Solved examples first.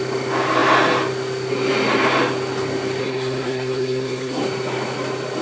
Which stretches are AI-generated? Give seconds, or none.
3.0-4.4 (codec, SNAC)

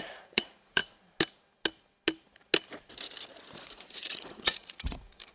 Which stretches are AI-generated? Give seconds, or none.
0.0-0.8 (vocoder, Vocos); 3.6-5.3

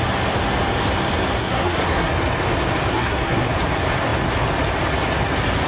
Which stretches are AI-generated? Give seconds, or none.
1.4-2.1 (codec, SNAC); 2.9-3.5

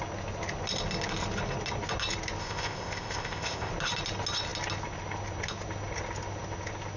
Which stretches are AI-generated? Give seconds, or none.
2.4-3.7 (codec, ZipCodec)